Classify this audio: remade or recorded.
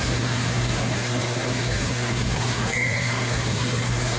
remade